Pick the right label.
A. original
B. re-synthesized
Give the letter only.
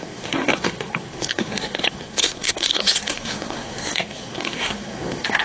B